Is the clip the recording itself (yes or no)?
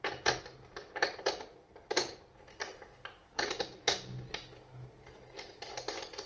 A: yes